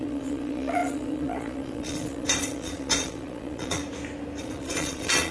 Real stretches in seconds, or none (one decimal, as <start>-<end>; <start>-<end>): 3.8-4.4